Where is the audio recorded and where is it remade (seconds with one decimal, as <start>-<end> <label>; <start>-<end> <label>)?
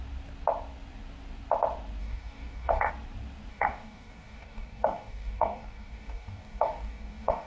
0.0-2.0 recorded; 2.0-2.9 remade; 2.9-3.5 recorded; 3.5-7.5 remade